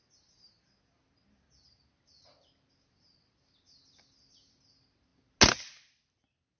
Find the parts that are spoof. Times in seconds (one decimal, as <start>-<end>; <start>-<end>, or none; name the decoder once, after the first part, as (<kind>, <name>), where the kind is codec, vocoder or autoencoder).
none